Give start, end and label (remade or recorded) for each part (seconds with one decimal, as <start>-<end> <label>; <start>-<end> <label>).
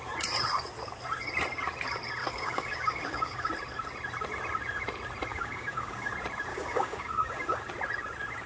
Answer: 0.0-2.2 recorded; 2.2-3.5 remade; 3.5-5.3 recorded; 5.3-6.1 remade; 6.1-6.5 recorded; 6.5-7.6 remade; 7.6-8.5 recorded